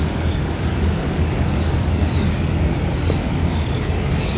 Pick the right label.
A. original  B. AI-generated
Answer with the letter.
B